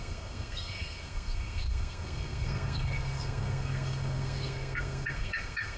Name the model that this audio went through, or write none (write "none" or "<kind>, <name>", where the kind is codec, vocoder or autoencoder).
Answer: codec, SNAC